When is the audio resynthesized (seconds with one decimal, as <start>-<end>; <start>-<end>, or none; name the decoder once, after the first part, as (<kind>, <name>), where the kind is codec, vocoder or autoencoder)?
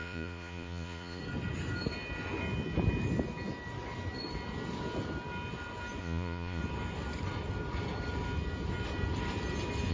0.0-1.2 (vocoder, Vocos); 6.0-6.6